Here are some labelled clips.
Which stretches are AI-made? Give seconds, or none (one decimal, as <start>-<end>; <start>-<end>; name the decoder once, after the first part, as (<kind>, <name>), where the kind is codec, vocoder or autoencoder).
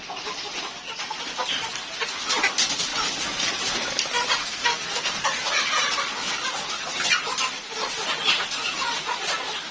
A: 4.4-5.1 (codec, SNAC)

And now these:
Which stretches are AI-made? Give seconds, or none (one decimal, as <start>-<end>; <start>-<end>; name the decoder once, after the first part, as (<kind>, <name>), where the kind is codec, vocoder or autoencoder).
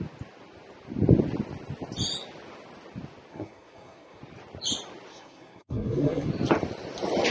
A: 3.3-4.2 (codec, SNAC); 5.1-6.3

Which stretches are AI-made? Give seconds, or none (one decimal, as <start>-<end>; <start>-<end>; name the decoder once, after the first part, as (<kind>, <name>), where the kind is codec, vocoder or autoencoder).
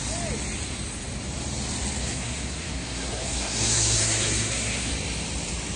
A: 2.0-4.9 (codec, SNAC)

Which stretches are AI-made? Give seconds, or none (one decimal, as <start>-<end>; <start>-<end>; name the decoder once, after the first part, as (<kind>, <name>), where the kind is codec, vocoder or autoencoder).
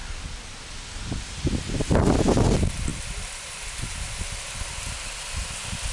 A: none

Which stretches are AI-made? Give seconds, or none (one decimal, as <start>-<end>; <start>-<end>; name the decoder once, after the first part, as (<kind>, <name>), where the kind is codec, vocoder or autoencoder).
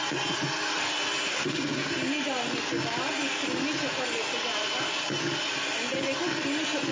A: 1.3-1.9 (codec, SNAC)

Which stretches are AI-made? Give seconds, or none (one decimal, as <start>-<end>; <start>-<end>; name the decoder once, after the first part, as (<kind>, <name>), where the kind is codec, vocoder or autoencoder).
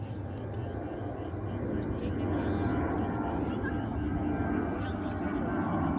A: none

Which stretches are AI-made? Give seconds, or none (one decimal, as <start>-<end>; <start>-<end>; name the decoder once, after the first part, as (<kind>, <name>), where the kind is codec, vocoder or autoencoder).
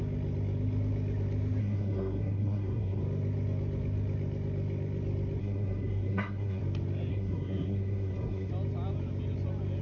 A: 1.6-3.0 (codec, SNAC); 5.4-6.6; 7.1-8.5